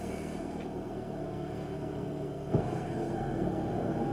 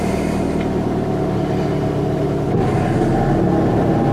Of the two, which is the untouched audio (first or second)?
second